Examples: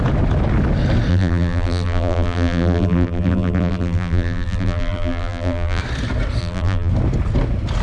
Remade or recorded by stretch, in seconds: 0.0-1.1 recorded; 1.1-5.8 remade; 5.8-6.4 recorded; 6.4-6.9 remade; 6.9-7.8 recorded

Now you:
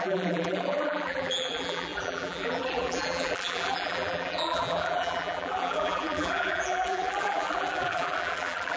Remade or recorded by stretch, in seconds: 0.0-8.8 remade

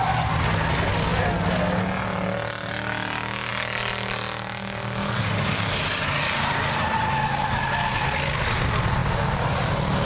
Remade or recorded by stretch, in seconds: 0.0-10.1 recorded

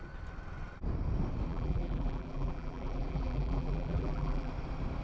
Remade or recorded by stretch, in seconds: 0.0-1.5 recorded; 1.5-4.5 remade; 4.5-5.0 recorded